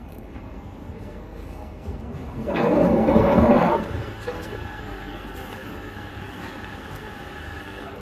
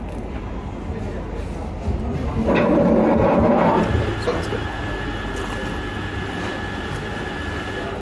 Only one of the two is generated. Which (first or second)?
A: first